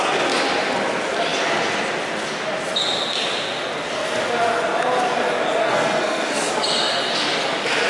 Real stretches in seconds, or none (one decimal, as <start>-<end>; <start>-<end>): 0.0-5.6; 6.5-7.9